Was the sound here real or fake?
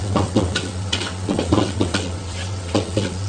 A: fake